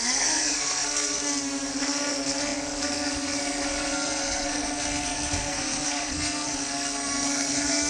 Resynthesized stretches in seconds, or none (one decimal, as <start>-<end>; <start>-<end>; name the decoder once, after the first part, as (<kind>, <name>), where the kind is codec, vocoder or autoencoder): 0.0-1.2 (codec, SNAC); 1.7-7.9